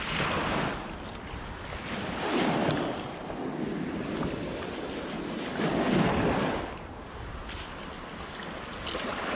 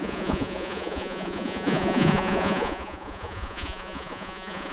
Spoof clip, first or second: second